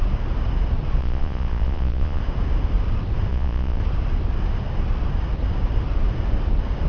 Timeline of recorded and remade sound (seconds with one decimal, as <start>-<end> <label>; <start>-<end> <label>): 0.0-1.0 recorded; 1.0-2.2 remade; 2.2-3.3 recorded; 3.3-3.8 remade; 3.8-6.9 recorded